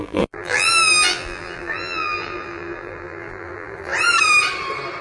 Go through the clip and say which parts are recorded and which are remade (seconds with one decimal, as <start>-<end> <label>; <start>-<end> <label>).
0.0-3.9 remade; 3.9-5.0 recorded